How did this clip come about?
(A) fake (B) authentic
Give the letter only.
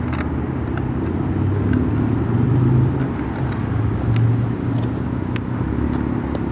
B